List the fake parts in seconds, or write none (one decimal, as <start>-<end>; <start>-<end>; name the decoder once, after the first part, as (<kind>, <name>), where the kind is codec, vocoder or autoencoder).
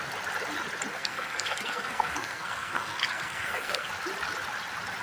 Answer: 0.9-3.9 (codec, SNAC)